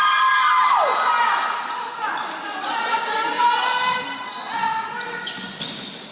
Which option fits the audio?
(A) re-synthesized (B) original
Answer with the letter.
B